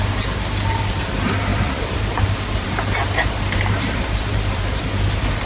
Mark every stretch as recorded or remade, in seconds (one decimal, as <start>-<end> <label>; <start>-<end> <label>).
0.0-1.5 recorded; 1.5-4.8 remade; 4.8-5.5 recorded